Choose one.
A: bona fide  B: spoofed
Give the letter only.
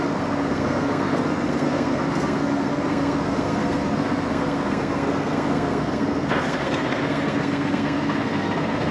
B